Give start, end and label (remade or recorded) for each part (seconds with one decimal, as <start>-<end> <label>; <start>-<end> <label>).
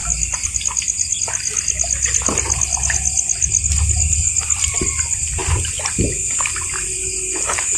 0.0-7.8 recorded